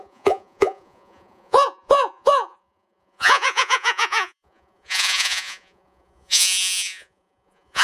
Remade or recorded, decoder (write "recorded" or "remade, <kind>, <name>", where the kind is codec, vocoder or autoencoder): remade, vocoder, Vocos